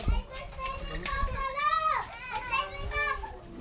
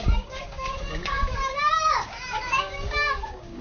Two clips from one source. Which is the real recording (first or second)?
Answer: first